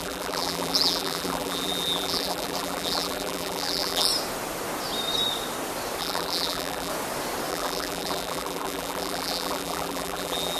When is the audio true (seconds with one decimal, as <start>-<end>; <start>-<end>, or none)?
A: 4.1-6.0; 6.9-7.5